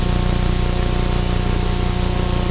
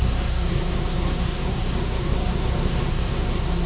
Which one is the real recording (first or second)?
first